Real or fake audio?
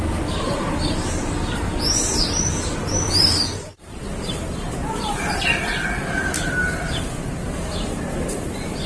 fake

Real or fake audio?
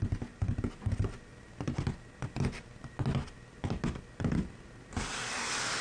real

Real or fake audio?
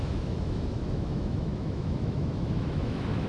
fake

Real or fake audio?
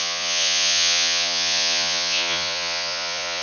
fake